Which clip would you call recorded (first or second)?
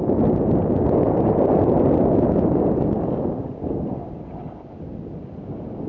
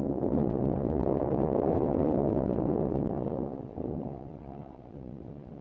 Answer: first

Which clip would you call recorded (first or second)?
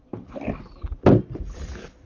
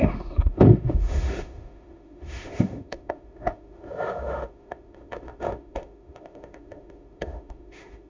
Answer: first